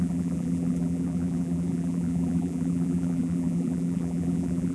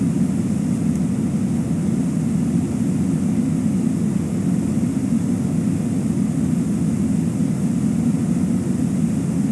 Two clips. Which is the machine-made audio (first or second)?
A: first